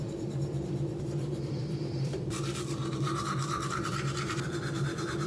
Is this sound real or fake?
fake